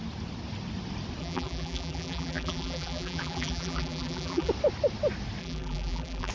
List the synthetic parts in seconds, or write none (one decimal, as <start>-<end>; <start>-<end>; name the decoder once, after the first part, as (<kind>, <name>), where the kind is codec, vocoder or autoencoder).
1.2-4.5 (vocoder, BigVGAN v2); 5.4-6.3